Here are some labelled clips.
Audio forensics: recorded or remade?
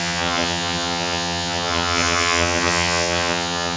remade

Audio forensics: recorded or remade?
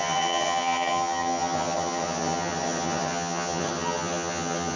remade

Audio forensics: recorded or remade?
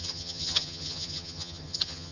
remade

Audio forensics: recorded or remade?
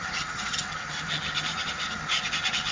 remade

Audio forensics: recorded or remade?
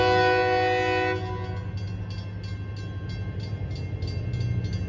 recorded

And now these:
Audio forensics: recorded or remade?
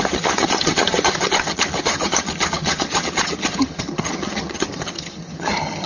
remade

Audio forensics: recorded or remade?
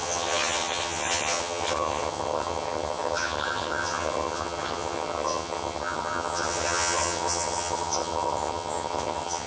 remade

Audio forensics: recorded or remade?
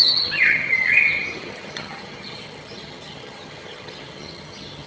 remade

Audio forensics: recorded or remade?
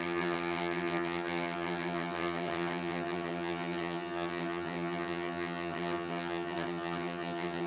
remade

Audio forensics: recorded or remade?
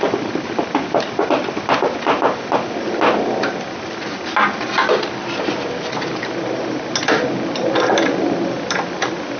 recorded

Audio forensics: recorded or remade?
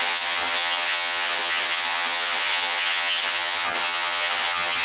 remade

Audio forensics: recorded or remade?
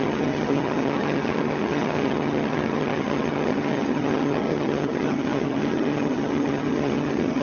remade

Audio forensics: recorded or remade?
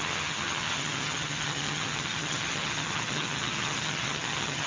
remade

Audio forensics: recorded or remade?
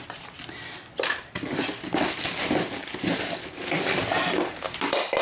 recorded